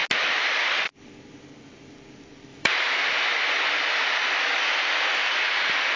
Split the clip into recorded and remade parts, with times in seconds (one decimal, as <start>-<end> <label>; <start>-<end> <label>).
0.0-2.5 recorded; 2.5-3.0 remade; 3.0-6.0 recorded